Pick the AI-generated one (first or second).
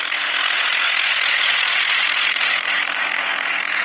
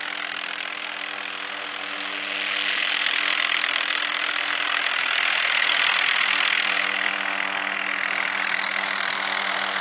first